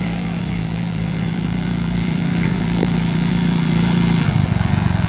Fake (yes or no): yes